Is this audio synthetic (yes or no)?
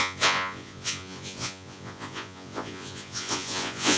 yes